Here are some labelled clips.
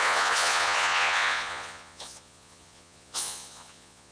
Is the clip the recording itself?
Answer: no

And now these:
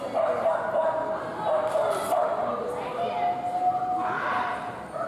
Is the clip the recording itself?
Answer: yes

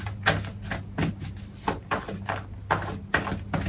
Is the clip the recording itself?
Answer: yes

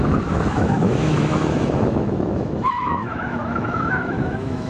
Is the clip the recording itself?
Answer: no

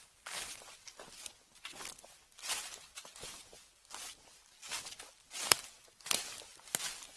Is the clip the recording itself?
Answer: yes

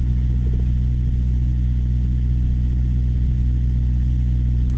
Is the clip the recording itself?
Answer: yes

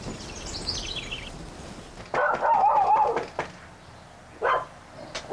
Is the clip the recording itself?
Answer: yes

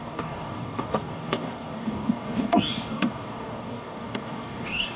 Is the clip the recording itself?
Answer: no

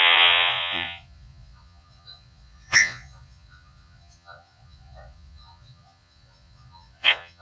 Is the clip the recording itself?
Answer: no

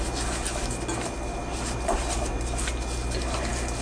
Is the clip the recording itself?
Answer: yes